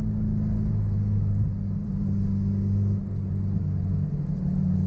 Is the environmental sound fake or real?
real